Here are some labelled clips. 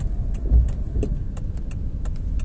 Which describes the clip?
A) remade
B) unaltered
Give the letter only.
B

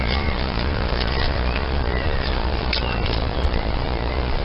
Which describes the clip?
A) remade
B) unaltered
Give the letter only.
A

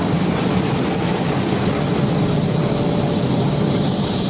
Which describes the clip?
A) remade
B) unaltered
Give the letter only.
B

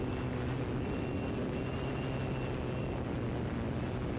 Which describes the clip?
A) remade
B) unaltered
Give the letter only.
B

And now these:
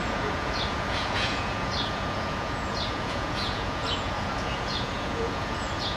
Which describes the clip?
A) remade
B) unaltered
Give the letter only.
A